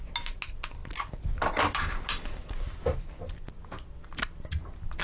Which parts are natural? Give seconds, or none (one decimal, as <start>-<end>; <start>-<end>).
0.0-5.0